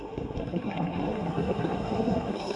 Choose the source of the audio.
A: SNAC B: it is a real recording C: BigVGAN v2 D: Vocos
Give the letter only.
A